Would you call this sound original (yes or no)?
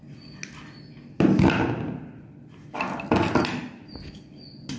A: yes